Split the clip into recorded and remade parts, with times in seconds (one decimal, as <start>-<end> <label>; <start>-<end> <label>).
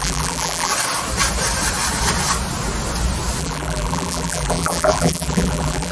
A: 0.0-0.7 remade; 0.7-3.4 recorded; 3.4-5.9 remade